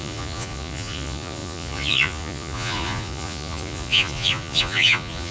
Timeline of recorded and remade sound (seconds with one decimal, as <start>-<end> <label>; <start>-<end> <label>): 0.0-5.3 remade

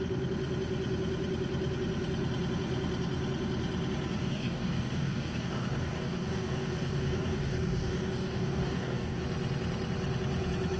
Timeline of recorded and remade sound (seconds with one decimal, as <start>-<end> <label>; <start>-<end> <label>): 0.0-4.2 recorded; 4.2-9.2 remade; 9.2-10.8 recorded

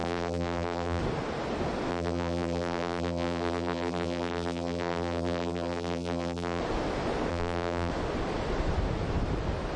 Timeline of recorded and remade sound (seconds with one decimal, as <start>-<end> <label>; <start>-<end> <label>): 0.0-1.0 remade; 1.0-1.9 recorded; 1.9-6.6 remade; 6.6-7.3 recorded; 7.3-7.9 remade; 7.9-9.8 recorded